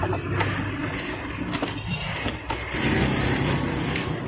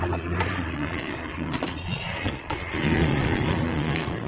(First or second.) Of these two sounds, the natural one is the first